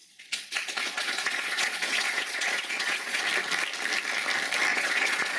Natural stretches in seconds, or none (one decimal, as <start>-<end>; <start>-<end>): 3.2-4.7